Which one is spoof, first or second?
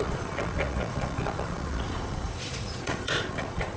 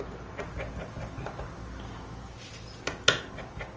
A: first